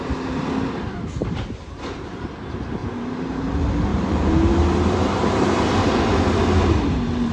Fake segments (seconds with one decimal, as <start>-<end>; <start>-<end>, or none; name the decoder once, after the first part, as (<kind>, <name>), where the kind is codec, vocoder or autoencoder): 1.2-2.2 (vocoder, BigVGAN v2); 2.8-3.5; 3.9-6.2